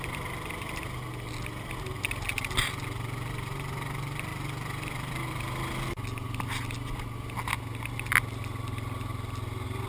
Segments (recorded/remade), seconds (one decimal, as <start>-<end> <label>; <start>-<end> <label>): 0.0-9.9 recorded